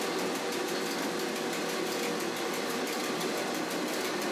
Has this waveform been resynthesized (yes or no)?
no